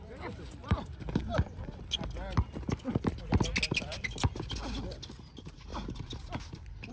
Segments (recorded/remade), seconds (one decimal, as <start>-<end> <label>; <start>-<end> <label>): 0.0-1.2 remade; 1.2-5.3 recorded; 5.3-5.7 remade; 5.7-6.9 recorded